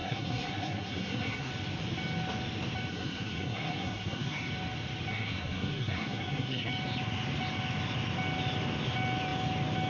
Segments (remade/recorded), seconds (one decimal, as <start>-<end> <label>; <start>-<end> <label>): 0.0-1.5 remade; 1.5-2.9 recorded; 2.9-4.5 remade; 4.5-5.1 recorded; 5.1-6.7 remade; 6.7-9.9 recorded